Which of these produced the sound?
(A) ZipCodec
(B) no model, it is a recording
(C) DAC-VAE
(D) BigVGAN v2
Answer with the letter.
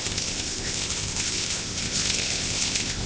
A